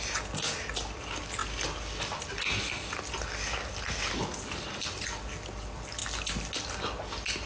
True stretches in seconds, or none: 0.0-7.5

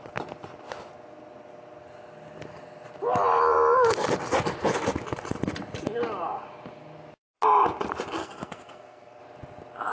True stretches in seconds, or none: 0.0-8.2; 9.2-9.9

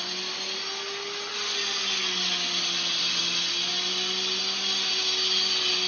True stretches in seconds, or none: 0.0-5.9

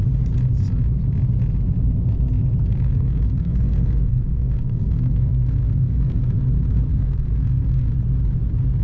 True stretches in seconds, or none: 0.0-2.7; 6.2-6.9; 7.9-8.8

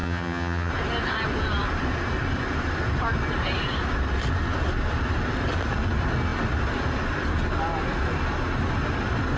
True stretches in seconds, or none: 0.7-9.4

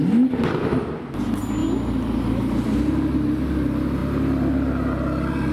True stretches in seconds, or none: 0.0-5.5